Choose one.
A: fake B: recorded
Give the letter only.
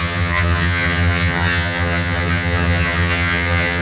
A